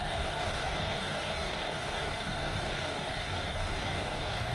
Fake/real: fake